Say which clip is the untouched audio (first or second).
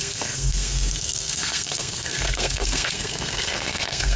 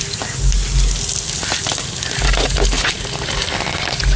second